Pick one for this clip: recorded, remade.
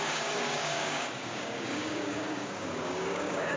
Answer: remade